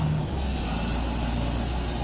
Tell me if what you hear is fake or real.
real